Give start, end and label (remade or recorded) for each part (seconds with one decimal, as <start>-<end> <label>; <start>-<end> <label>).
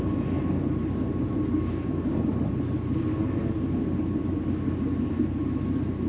0.0-1.5 recorded; 1.5-2.3 remade; 2.3-6.1 recorded